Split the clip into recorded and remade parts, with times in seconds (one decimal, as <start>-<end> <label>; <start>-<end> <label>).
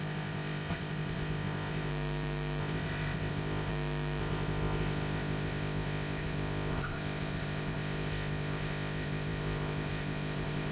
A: 0.0-1.9 remade; 1.9-2.6 recorded; 2.6-3.7 remade; 3.7-4.2 recorded; 4.2-10.7 remade